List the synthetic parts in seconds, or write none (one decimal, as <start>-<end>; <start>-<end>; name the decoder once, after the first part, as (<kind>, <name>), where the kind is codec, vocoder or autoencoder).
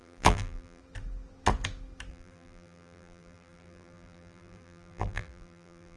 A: 0.0-0.8 (vocoder, BigVGAN v2); 2.1-6.0